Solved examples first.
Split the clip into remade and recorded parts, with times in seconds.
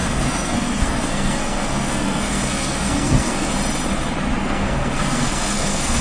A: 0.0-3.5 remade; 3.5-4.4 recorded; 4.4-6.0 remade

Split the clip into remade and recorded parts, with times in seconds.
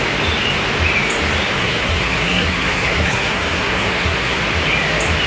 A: 0.0-1.6 recorded; 1.6-4.4 remade; 4.4-5.3 recorded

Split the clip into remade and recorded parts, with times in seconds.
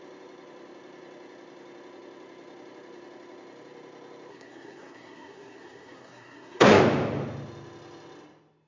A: 0.0-4.3 recorded; 4.3-6.8 remade; 6.8-8.7 recorded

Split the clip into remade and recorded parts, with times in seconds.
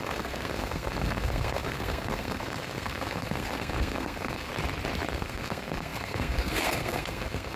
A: 0.0-4.5 remade; 4.5-5.1 recorded; 5.1-7.6 remade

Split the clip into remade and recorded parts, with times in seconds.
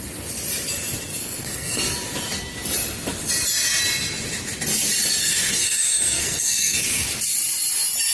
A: 0.0-1.1 recorded; 1.1-1.8 remade; 1.8-5.2 recorded; 5.2-7.1 remade; 7.1-8.1 recorded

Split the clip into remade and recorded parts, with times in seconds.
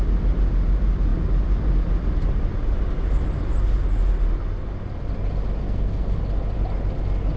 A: 0.0-5.6 recorded; 5.6-6.2 remade; 6.2-7.4 recorded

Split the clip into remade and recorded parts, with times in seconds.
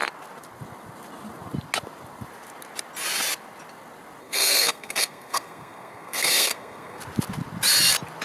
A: 0.0-4.2 recorded; 4.2-7.0 remade; 7.0-8.2 recorded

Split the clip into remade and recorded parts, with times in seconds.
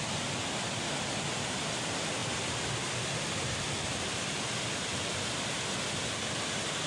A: 0.0-6.9 recorded